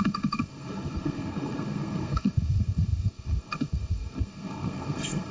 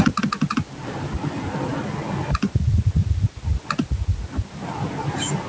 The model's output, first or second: first